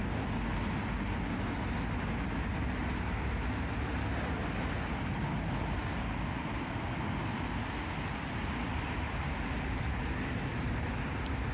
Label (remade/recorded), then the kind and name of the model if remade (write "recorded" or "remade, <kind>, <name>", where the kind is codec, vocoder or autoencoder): recorded